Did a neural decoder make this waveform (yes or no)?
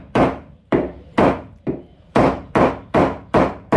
yes